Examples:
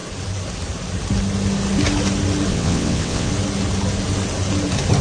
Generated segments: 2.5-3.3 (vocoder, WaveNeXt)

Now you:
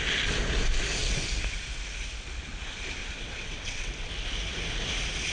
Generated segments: 3.0-3.9 (vocoder, WaveNeXt)

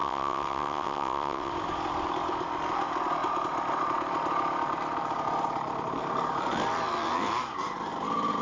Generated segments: 0.0-1.5 (vocoder, WaveNeXt)

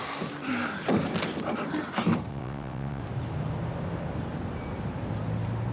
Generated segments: 2.3-3.0 (vocoder, WaveNeXt)

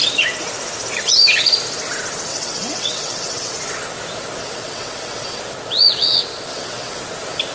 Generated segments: 2.3-3.5 (vocoder, WaveNeXt); 4.4-5.4; 6.5-7.0

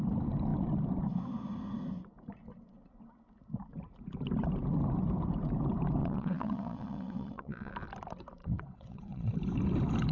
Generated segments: 6.0-7.7 (vocoder, WaveNeXt); 8.4-9.3

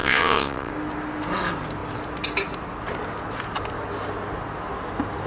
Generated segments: 0.0-0.7 (vocoder, WaveNeXt)

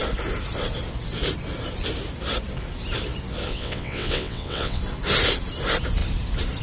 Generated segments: 3.5-4.8 (vocoder, WaveNeXt)